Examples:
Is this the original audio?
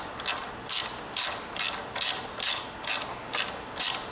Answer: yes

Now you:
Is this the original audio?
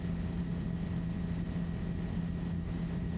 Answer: yes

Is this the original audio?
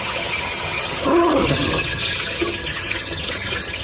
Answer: no